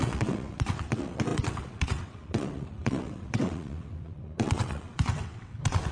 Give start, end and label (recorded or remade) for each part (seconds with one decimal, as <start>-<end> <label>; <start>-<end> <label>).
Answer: 0.0-5.9 remade